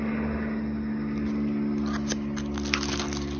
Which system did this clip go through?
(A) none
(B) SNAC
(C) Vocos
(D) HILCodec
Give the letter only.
A